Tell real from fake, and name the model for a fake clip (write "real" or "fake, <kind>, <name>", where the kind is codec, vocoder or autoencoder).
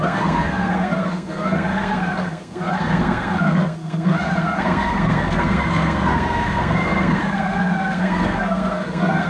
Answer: fake, codec, SNAC